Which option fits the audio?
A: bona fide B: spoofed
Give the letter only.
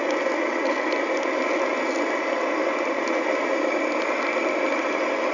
A